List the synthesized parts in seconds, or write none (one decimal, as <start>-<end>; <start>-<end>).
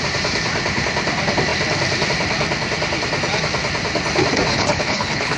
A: 4.5-5.4